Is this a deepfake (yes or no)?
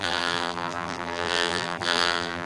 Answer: yes